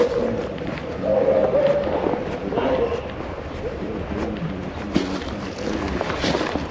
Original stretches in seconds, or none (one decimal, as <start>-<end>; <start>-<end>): 0.0-1.1; 4.0-6.7